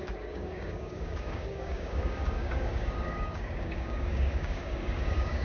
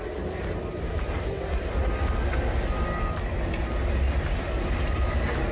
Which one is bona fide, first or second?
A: second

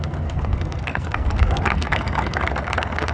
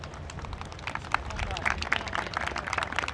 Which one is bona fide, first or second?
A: second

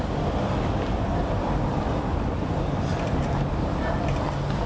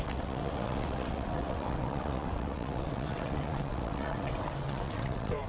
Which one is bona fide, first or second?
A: first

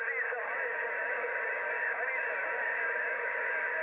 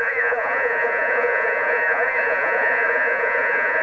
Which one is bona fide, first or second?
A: first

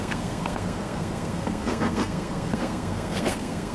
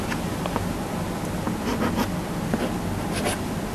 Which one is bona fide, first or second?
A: second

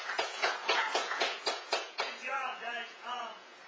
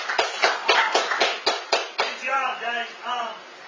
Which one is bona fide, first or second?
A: second